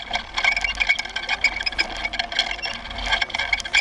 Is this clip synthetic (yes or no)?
no